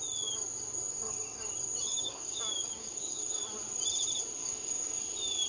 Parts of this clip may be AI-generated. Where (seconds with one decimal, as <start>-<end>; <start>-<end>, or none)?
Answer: 0.9-1.5; 1.9-2.4; 2.8-3.4; 4.4-5.0